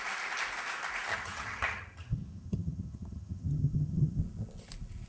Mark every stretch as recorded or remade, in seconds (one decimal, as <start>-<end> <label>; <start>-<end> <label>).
0.0-1.1 recorded; 1.1-4.2 remade; 4.2-5.1 recorded